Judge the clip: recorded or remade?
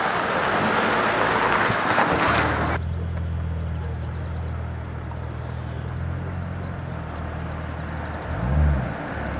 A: recorded